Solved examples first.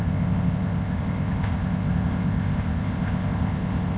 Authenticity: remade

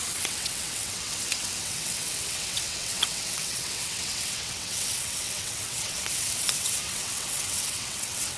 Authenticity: remade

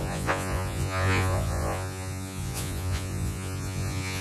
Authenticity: remade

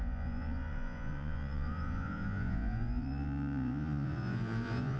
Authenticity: remade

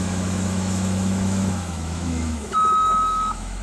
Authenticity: remade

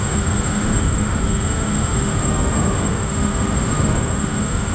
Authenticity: remade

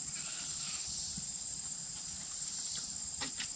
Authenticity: remade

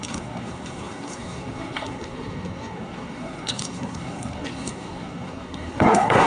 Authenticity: remade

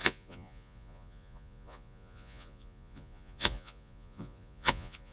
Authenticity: remade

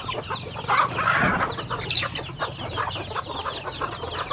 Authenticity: recorded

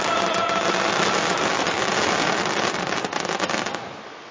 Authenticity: recorded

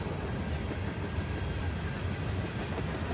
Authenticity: recorded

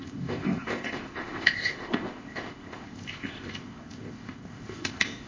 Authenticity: remade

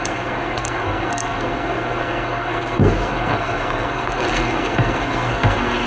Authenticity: remade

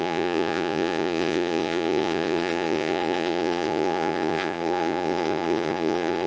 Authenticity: remade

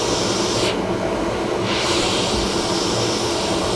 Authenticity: recorded